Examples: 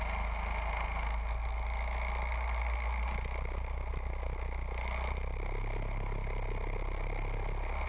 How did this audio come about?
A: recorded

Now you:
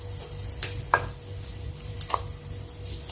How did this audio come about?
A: remade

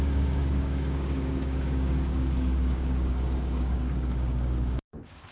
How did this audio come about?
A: remade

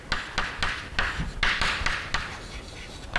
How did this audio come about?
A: recorded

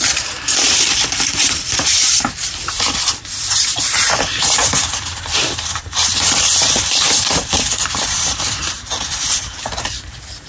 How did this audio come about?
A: remade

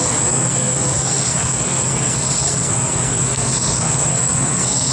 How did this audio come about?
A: remade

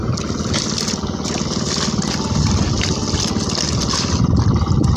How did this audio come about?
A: recorded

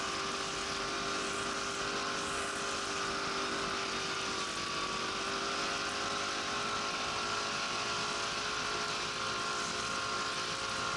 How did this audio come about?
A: recorded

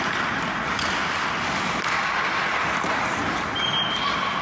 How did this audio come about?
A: remade